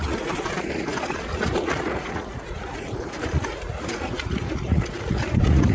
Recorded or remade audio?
remade